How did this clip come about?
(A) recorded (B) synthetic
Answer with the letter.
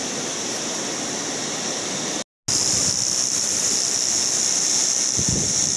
A